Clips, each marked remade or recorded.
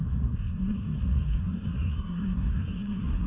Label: remade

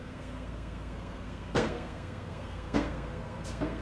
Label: remade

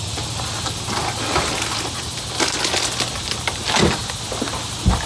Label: recorded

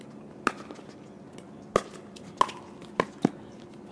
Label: recorded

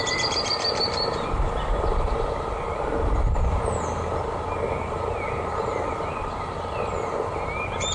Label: recorded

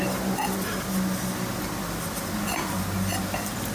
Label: recorded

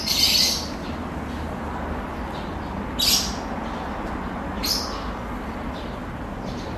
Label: recorded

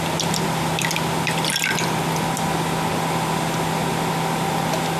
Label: recorded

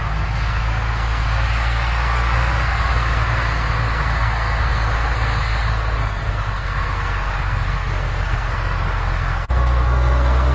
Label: remade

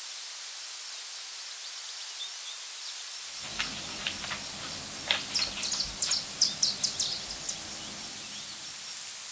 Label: recorded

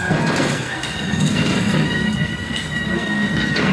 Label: remade